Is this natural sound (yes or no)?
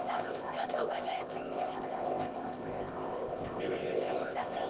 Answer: no